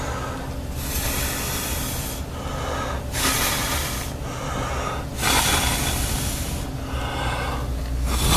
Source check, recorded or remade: recorded